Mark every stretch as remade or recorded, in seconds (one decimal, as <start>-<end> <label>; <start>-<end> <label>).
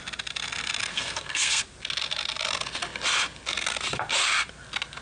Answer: 0.0-0.9 recorded; 0.9-1.6 remade; 1.6-5.0 recorded